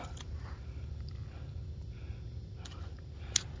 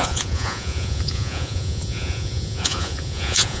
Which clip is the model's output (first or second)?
second